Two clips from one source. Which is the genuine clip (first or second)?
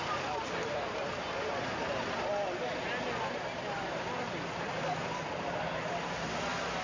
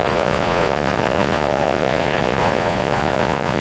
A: first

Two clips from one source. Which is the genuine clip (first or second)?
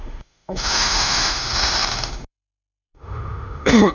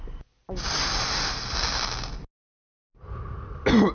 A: second